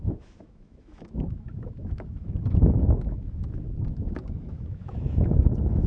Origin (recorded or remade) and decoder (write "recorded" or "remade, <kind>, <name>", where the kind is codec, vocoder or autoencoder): remade, autoencoder, DAC-VAE